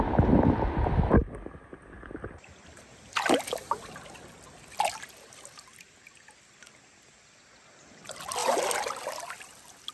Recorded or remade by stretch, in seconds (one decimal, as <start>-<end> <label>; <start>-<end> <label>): 0.0-9.9 recorded